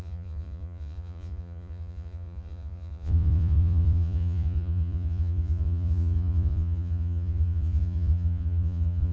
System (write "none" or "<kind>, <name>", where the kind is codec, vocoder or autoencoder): vocoder, Vocos